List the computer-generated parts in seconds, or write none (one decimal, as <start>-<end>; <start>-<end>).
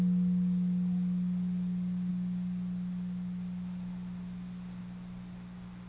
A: none